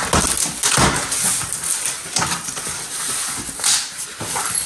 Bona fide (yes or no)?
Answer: yes